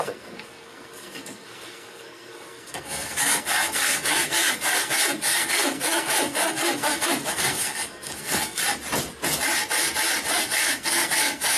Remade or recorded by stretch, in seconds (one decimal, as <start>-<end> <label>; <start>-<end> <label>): 0.0-8.6 remade; 8.6-10.3 recorded; 10.3-11.6 remade